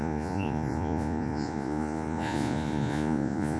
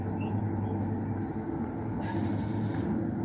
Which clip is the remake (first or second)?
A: first